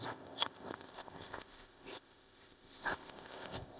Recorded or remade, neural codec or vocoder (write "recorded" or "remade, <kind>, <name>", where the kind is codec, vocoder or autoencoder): remade, codec, ZipCodec